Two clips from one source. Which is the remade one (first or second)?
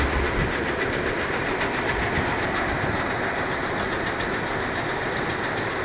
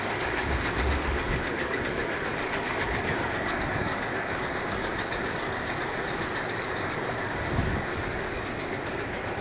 second